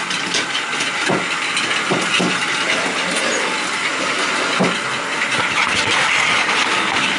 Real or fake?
real